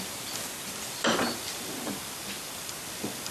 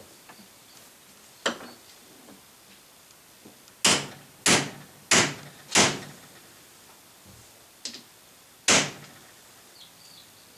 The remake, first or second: first